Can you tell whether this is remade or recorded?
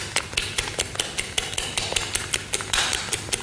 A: recorded